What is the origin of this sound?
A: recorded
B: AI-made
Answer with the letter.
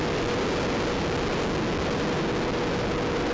A